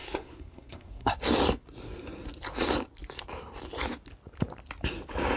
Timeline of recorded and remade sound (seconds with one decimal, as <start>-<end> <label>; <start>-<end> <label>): 0.0-1.1 remade; 1.1-5.4 recorded